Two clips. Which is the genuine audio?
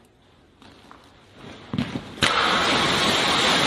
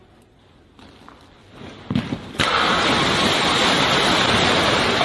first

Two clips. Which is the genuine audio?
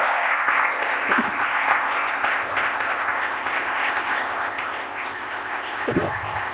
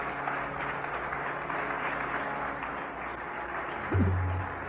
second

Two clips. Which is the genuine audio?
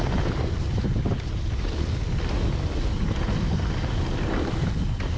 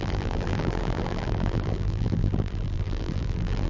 first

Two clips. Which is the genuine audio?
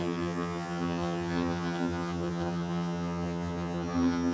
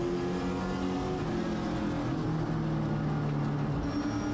second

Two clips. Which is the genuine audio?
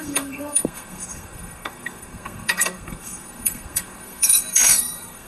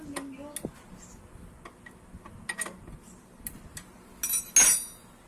second